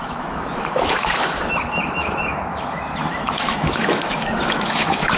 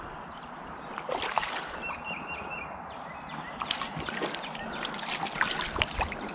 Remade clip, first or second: first